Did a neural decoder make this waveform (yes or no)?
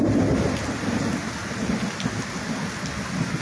no